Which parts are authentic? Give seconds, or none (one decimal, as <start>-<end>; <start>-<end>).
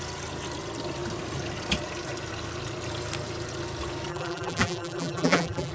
0.0-4.1